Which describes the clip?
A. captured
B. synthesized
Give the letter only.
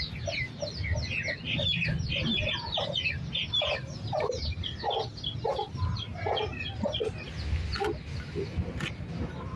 A